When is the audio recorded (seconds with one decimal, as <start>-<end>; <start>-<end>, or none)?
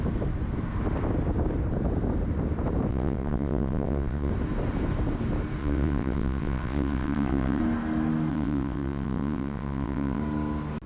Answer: 0.0-2.9; 4.3-5.6; 7.6-8.3; 10.2-10.9